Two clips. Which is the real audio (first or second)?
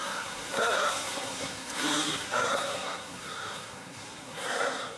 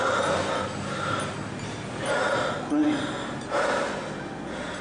second